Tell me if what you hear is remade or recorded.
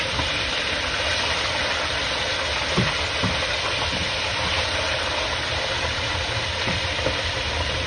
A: recorded